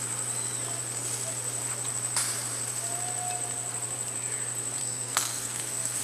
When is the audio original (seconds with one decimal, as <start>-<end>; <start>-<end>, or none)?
0.0-4.8

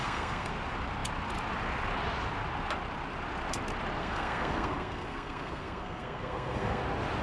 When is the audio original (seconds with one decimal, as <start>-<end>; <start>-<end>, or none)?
0.5-4.0; 6.8-7.2

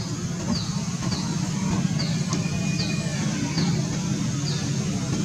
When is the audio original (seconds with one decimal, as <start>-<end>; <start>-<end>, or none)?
0.0-0.7; 1.5-3.1; 3.7-5.2